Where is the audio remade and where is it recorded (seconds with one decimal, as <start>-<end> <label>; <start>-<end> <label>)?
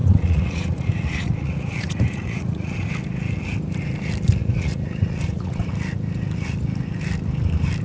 0.0-2.9 remade; 2.9-4.4 recorded; 4.4-5.7 remade; 5.7-7.8 recorded